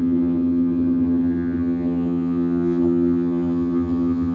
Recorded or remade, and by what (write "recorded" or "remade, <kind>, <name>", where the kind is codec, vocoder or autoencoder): remade, vocoder, HiFi-GAN